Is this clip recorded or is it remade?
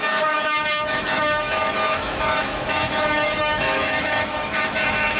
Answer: remade